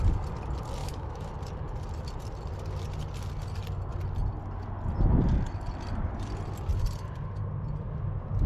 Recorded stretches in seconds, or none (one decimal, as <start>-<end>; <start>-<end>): 0.0-0.8; 1.3-8.5

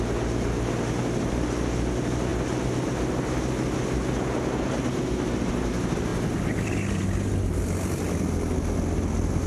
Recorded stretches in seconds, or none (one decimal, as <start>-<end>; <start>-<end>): 0.0-9.5

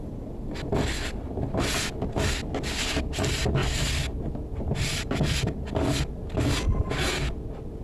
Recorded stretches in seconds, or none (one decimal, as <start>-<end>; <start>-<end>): 0.0-7.8